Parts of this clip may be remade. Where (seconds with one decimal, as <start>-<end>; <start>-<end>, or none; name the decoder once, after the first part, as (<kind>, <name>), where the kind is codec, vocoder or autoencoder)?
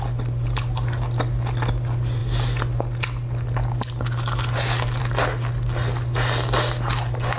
none